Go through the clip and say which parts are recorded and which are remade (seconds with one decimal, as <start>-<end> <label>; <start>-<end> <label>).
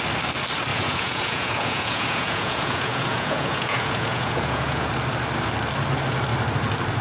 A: 0.0-0.7 recorded; 0.7-4.9 remade; 4.9-7.0 recorded